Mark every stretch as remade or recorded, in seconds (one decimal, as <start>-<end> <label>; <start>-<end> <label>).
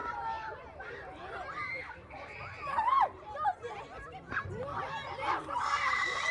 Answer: 0.0-3.8 remade; 3.8-4.7 recorded; 4.7-6.3 remade